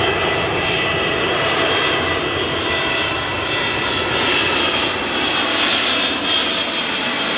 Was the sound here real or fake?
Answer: real